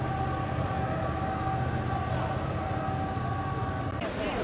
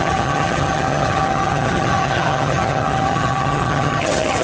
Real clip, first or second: first